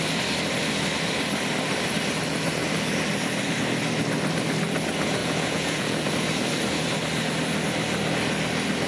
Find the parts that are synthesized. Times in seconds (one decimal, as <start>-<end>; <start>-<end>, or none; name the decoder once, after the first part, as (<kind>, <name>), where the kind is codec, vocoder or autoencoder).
5.2-6.1 (vocoder, Vocos)